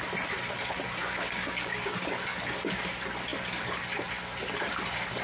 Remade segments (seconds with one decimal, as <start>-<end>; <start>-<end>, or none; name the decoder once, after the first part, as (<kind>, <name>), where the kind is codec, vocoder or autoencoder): 1.0-2.0 (codec, DAC)